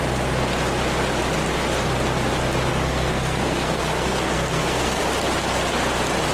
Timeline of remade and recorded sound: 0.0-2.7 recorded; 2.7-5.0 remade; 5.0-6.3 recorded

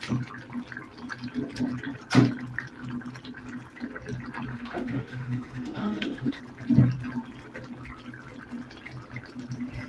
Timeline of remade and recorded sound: 0.0-4.5 recorded; 4.5-6.4 remade; 6.4-9.9 recorded